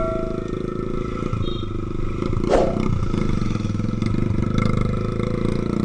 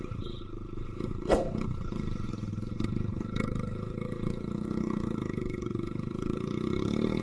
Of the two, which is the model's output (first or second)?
second